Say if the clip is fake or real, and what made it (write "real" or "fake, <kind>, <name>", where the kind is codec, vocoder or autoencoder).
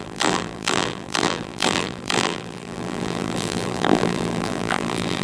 fake, vocoder, BigVGAN v2